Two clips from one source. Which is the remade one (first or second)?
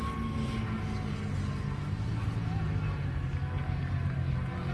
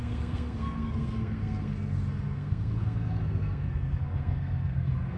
second